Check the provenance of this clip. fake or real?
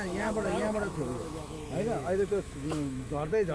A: fake